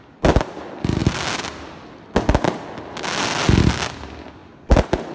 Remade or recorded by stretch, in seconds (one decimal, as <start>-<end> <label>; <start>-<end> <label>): 0.0-5.1 recorded